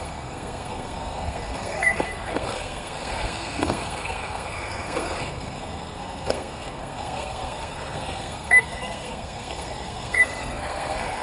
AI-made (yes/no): yes